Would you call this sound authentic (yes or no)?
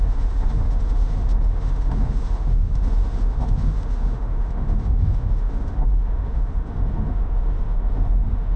no